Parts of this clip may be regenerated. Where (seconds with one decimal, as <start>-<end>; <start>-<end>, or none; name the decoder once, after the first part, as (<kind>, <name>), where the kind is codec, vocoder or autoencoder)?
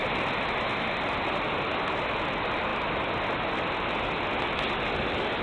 none